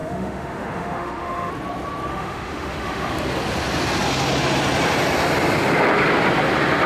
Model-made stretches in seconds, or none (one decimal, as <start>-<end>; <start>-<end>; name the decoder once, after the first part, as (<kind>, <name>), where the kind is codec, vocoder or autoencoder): 0.0-1.5 (autoencoder, DAC-VAE); 2.1-3.1

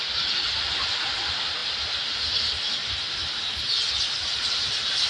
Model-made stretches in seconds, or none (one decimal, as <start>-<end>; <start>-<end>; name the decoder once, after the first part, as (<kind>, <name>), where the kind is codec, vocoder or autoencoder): none

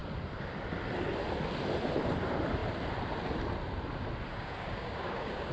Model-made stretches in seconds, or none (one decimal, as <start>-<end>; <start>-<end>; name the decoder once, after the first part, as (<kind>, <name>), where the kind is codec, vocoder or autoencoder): 4.3-5.5 (codec, DAC)

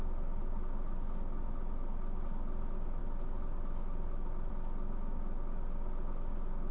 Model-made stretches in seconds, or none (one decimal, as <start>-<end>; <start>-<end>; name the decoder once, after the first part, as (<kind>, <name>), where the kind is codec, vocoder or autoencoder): none

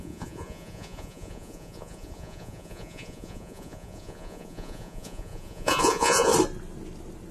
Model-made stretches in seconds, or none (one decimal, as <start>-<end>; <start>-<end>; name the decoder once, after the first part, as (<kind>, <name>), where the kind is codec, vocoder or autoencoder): 0.0-6.3 (vocoder, Vocos)

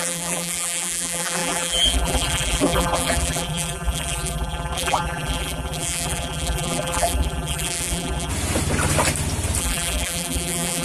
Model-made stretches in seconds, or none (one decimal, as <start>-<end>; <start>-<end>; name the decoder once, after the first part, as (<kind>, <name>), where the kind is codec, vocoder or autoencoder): 0.0-8.3 (vocoder, BigVGAN v2); 9.6-10.8

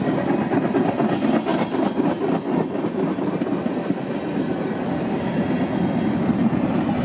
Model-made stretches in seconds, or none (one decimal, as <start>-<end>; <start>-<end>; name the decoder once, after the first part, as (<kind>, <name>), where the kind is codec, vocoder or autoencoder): none

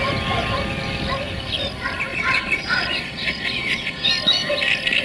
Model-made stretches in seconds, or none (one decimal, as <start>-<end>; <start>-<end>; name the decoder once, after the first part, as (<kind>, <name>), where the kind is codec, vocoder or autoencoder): 2.1-4.1 (vocoder, Vocos)